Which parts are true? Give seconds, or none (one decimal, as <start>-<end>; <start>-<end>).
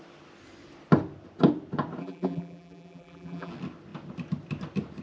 0.0-2.0; 3.5-5.0